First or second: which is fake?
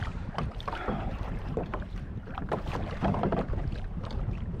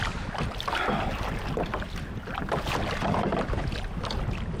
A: first